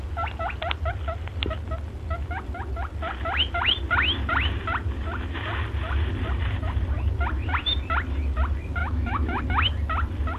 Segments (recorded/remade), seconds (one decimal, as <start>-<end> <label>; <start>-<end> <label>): 0.0-8.8 recorded; 8.8-9.4 remade; 9.4-10.4 recorded